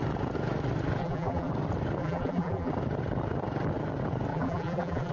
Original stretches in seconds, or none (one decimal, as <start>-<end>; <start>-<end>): 0.0-1.0; 1.5-2.0; 2.7-4.3